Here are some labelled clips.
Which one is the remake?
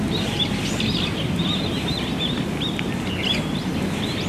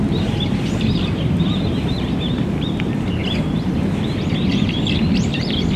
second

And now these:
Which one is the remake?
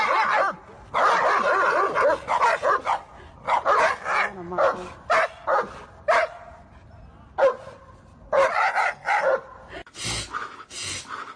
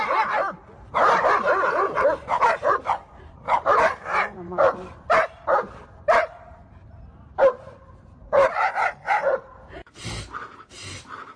second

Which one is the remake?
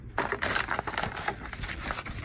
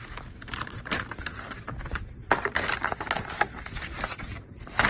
second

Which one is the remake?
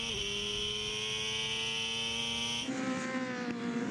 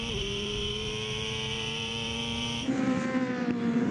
second